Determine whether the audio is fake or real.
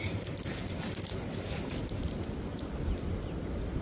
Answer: real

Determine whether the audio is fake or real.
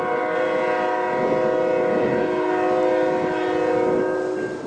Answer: real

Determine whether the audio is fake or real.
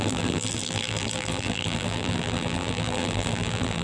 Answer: fake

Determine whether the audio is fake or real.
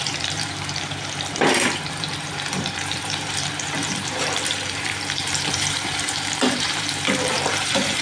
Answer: fake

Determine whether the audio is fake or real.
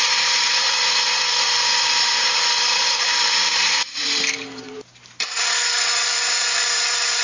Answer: fake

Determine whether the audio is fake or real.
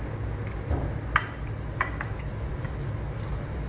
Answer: real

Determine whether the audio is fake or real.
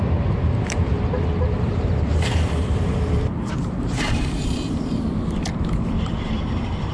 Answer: fake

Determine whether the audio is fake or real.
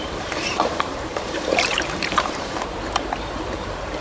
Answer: fake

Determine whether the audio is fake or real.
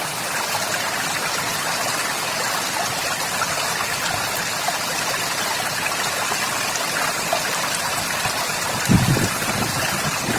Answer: fake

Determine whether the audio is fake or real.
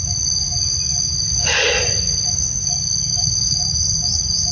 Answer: real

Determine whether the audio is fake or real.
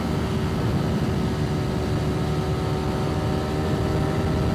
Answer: real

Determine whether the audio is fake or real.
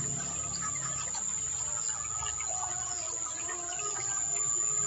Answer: real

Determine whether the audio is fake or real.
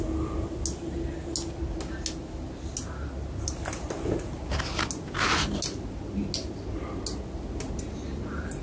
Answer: real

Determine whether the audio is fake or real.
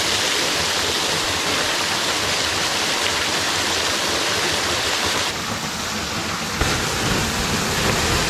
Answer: real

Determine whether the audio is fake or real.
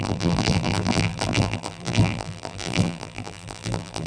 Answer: fake